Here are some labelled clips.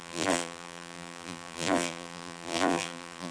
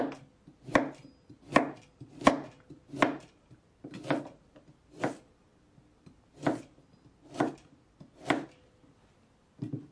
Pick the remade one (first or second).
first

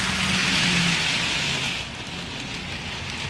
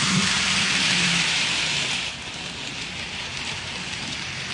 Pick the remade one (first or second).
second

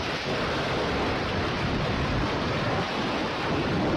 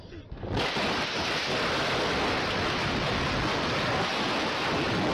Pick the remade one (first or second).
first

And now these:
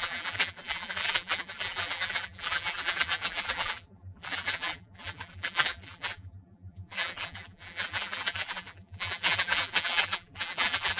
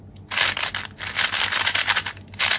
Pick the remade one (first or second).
first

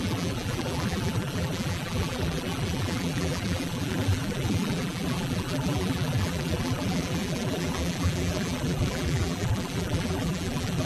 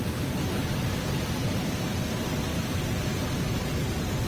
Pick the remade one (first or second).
first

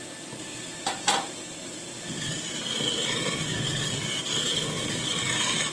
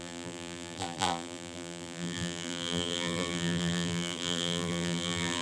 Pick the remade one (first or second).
second